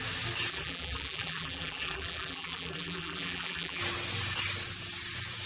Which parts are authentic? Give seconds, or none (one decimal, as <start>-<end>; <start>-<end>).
0.0-0.5; 3.8-5.5